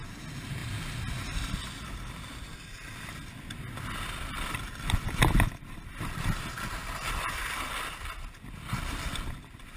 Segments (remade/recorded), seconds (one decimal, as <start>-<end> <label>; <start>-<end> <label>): 0.0-9.8 recorded